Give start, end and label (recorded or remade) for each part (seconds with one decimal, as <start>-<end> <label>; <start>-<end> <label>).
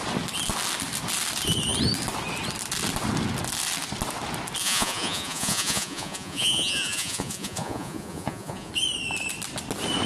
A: 0.0-4.6 recorded; 4.6-8.7 remade; 8.7-10.1 recorded